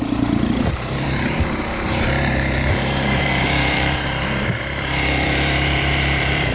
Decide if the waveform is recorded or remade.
remade